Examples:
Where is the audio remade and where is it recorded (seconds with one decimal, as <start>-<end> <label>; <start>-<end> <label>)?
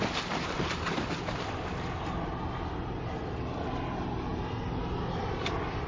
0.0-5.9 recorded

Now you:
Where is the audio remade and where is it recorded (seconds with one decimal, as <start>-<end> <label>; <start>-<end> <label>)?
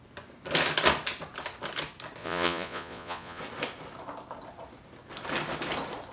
0.0-2.2 recorded; 2.2-3.4 remade; 3.4-6.1 recorded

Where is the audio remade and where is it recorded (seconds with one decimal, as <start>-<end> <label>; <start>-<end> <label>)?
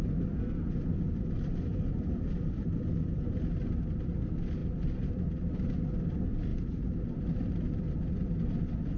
0.0-9.0 recorded